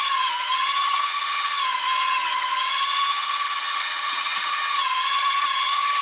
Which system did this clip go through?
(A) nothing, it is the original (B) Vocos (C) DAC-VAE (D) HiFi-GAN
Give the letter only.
D